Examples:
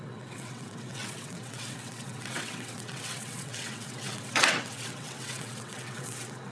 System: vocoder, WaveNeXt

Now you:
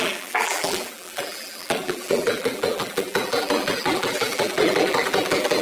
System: vocoder, BigVGAN v2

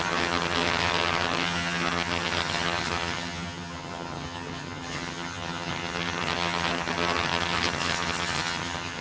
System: vocoder, HiFi-GAN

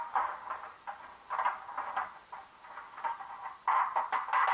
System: none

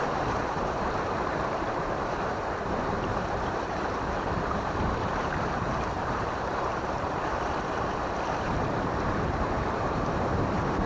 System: vocoder, BigVGAN v2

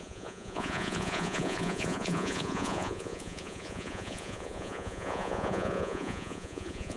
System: vocoder, Vocos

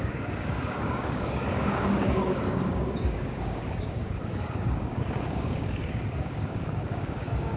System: codec, DAC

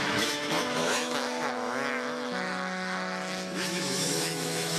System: autoencoder, DAC-VAE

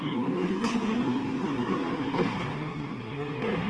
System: codec, SNAC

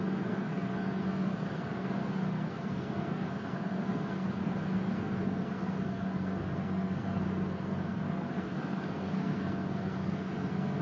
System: codec, SNAC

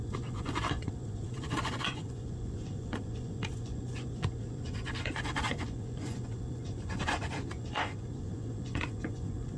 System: vocoder, Vocos